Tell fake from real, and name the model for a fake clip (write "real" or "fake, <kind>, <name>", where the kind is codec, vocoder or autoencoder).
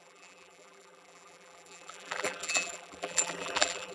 fake, vocoder, BigVGAN v2